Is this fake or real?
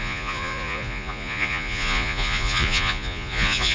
fake